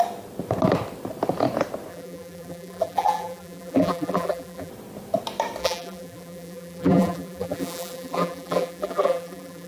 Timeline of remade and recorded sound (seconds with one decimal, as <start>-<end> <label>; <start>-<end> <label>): 0.0-1.9 recorded; 1.9-4.7 remade; 4.7-5.6 recorded; 5.6-9.7 remade